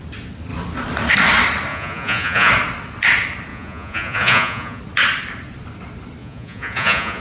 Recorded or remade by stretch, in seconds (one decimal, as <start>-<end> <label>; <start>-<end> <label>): 0.0-1.7 recorded; 1.7-2.5 remade; 2.5-3.5 recorded; 3.5-4.8 remade; 4.8-6.2 recorded; 6.2-7.2 remade